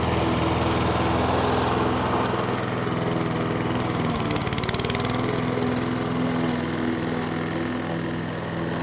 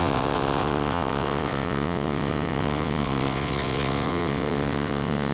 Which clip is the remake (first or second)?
second